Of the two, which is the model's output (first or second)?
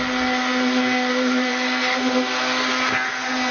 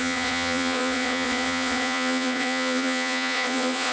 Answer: second